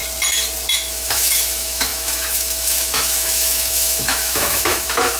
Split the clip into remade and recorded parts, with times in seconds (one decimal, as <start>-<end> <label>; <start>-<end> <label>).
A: 0.0-0.7 recorded; 0.7-5.2 remade

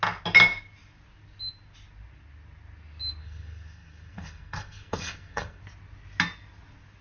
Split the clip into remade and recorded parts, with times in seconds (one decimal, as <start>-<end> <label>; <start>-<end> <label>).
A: 0.0-3.2 recorded; 3.2-5.6 remade; 5.6-7.0 recorded

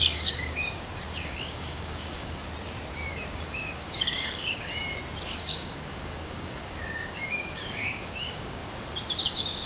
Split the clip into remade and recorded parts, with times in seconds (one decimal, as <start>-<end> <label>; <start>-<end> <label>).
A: 0.0-2.4 remade; 2.4-3.1 recorded; 3.1-4.7 remade; 4.7-5.4 recorded; 5.4-8.6 remade; 8.6-9.2 recorded; 9.2-9.7 remade

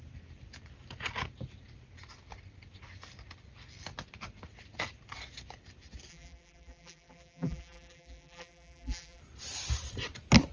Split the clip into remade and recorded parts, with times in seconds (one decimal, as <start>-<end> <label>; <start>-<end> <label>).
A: 0.0-6.1 recorded; 6.1-9.2 remade; 9.2-10.5 recorded

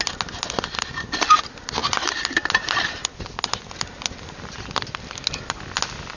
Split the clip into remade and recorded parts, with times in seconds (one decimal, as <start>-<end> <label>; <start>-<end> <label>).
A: 0.0-6.2 recorded

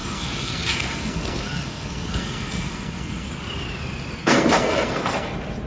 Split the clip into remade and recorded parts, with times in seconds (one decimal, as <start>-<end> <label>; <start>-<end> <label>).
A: 0.0-3.3 remade; 3.3-4.2 recorded; 4.2-5.3 remade; 5.3-5.7 recorded